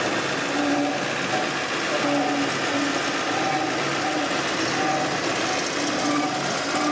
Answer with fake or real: real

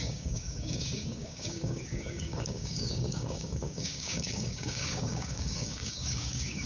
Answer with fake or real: fake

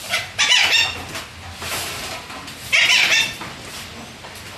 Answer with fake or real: real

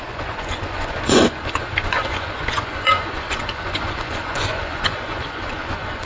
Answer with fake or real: fake